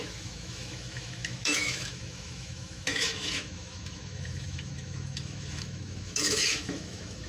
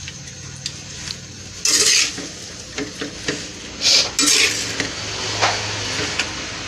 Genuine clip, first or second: second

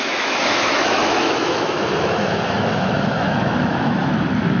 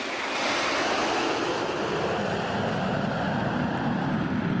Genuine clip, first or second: second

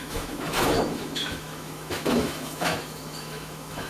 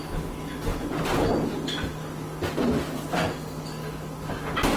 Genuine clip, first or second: second